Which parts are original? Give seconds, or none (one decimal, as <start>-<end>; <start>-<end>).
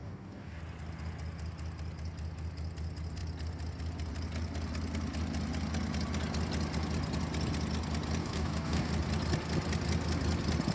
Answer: 0.6-8.2; 8.9-10.7